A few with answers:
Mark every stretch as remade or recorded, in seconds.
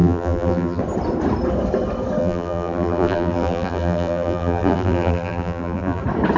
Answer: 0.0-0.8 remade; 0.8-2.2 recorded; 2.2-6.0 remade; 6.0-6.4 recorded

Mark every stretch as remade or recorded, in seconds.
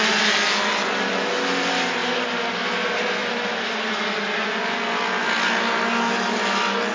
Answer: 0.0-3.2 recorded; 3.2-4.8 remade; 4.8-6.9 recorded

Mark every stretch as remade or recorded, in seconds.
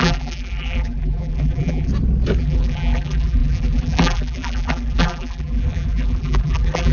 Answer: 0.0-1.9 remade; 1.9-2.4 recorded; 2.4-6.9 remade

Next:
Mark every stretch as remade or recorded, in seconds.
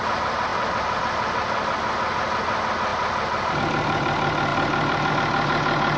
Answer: 0.0-2.9 recorded; 2.9-3.6 remade; 3.6-4.5 recorded; 4.5-5.1 remade; 5.1-6.0 recorded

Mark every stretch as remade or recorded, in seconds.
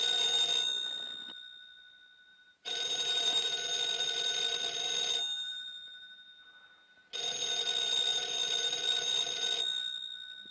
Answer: 0.0-2.3 recorded; 2.3-3.6 remade; 3.6-10.5 recorded